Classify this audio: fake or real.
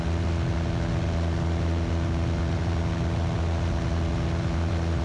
real